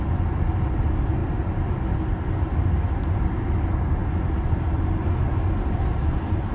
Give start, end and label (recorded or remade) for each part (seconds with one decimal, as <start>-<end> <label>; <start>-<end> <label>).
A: 0.0-6.5 recorded